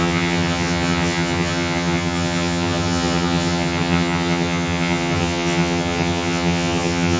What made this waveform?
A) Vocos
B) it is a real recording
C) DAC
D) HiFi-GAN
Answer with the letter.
D